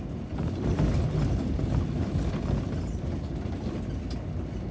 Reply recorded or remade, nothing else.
recorded